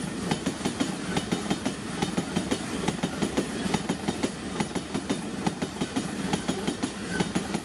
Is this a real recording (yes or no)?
yes